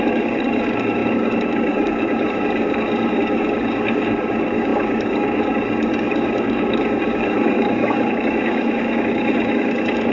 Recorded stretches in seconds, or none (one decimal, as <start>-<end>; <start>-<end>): none